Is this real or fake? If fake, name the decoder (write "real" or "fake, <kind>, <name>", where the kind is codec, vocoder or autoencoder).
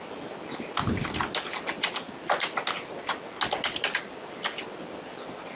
real